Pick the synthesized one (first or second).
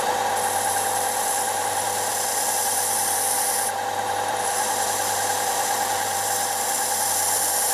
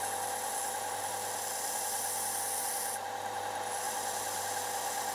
first